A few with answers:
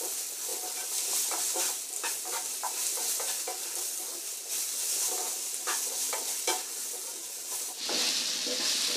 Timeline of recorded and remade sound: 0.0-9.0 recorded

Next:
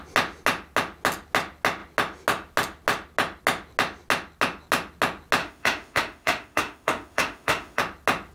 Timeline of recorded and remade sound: 0.0-5.4 recorded; 5.4-7.8 remade; 7.8-8.3 recorded

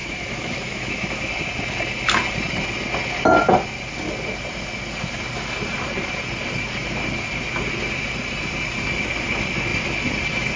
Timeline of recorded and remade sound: 0.0-1.3 remade; 1.3-10.6 recorded

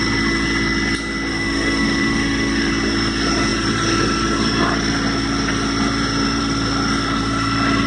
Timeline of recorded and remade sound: 0.0-1.3 recorded; 1.3-2.7 remade; 2.7-7.9 recorded

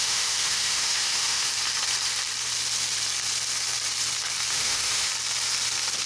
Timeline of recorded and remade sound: 0.0-1.5 remade; 1.5-4.5 recorded; 4.5-5.1 remade; 5.1-6.1 recorded

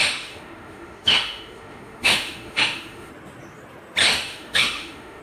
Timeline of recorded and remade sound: 0.0-3.1 remade; 3.1-4.0 recorded; 4.0-5.2 remade